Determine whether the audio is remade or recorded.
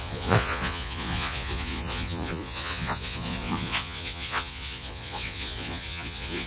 remade